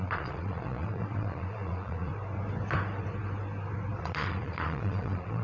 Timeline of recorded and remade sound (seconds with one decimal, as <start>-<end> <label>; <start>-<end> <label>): 0.0-2.1 remade; 2.1-4.0 recorded; 4.0-5.4 remade